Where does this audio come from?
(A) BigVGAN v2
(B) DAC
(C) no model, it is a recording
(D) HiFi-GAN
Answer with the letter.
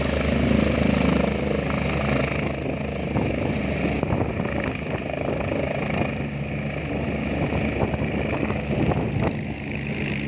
C